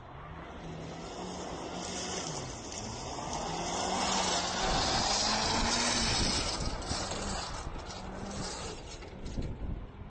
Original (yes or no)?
yes